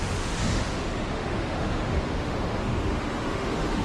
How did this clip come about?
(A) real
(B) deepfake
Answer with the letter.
B